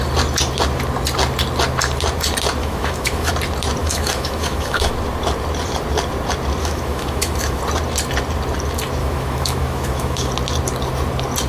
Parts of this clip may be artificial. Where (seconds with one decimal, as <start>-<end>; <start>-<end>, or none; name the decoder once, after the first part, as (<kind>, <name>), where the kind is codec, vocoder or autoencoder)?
2.6-3.3 (autoencoder, DAC-VAE); 3.8-4.9; 6.6-7.6; 9.0-10.3